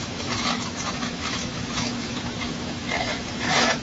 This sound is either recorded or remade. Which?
remade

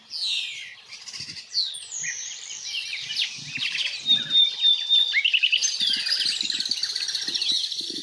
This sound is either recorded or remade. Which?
recorded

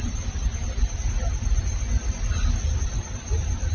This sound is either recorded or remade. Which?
recorded